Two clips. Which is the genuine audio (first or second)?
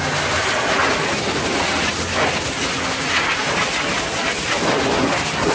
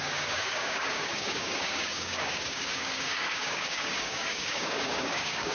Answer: first